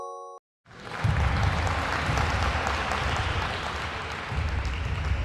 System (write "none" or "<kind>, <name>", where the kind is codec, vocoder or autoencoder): none